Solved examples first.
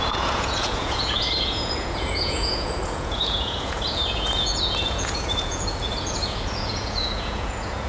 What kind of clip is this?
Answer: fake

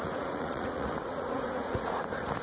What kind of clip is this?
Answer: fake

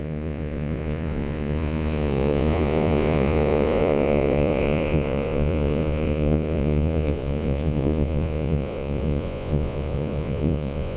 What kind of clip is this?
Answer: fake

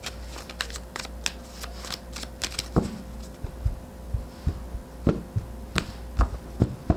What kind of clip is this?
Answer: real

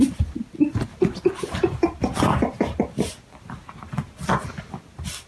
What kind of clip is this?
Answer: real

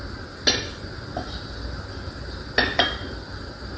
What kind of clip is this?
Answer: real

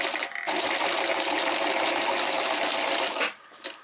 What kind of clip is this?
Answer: real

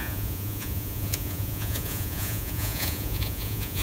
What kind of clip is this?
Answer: fake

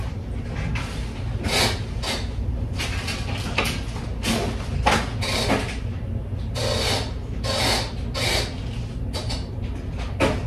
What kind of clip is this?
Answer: real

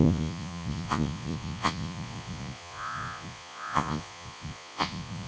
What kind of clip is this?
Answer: fake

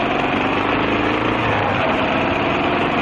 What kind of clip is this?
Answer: real